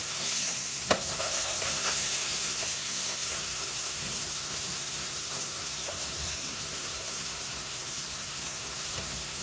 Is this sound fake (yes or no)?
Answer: yes